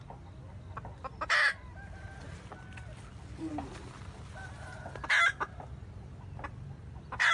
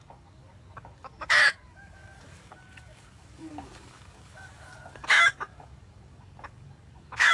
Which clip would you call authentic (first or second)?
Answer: first